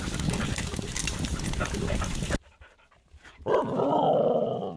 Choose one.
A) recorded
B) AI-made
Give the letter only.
A